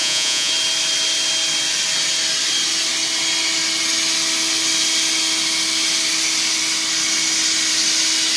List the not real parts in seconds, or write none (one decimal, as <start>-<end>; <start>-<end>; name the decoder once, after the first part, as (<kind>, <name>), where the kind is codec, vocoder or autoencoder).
0.0-0.5 (vocoder, Vocos)